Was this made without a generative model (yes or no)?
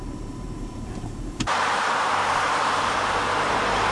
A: no